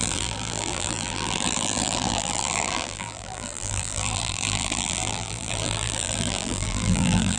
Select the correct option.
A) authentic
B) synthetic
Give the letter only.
B